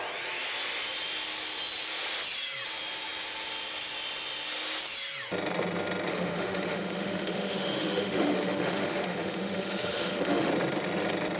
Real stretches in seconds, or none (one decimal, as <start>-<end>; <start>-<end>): 0.0-6.1; 10.5-11.4